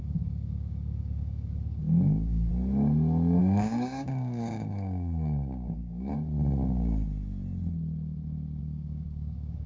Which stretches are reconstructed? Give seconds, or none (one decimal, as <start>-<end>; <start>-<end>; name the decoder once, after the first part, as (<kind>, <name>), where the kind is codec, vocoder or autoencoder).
0.0-2.5 (codec, DAC); 3.4-6.1; 8.6-9.7